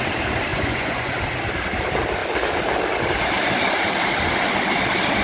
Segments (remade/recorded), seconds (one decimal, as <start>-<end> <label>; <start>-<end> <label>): 0.0-0.5 recorded; 0.5-1.1 remade; 1.1-5.2 recorded